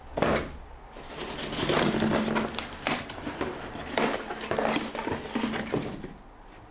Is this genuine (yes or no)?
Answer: yes